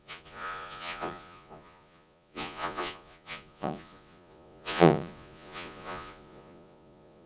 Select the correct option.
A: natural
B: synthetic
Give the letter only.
B